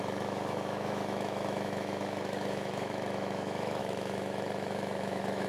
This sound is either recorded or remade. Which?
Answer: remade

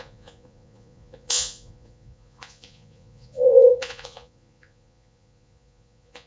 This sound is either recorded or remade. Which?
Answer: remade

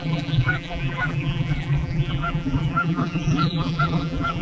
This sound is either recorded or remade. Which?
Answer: remade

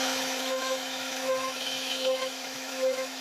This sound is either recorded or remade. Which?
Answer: remade